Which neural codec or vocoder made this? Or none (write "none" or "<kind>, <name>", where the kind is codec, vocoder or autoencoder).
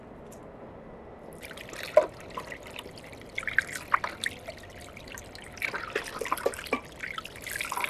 none